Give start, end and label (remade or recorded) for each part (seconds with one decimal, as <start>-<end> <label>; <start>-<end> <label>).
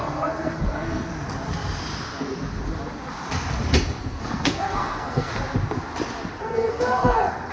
0.0-1.1 remade; 1.1-4.0 recorded; 4.0-5.3 remade; 5.3-6.4 recorded; 6.4-7.5 remade